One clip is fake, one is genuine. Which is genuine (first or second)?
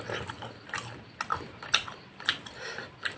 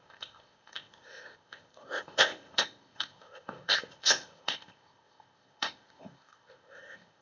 first